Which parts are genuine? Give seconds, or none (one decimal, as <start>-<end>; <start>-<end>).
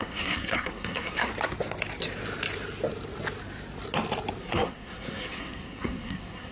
1.3-4.4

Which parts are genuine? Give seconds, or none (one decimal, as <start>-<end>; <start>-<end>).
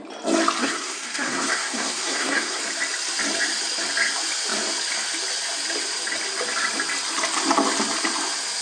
0.0-0.6; 2.6-8.6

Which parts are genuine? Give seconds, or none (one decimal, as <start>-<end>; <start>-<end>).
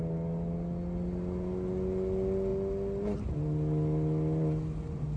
0.0-5.2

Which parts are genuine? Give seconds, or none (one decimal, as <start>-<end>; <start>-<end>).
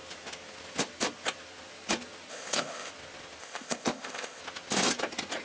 0.0-2.3; 2.9-3.4; 4.4-5.4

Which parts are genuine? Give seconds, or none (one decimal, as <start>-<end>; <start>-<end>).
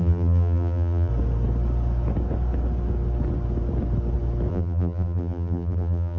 1.1-4.5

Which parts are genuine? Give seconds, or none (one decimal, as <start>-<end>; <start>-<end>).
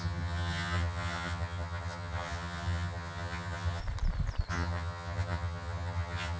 3.8-4.5